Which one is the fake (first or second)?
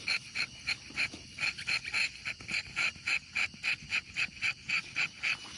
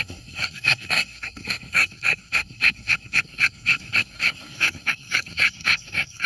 second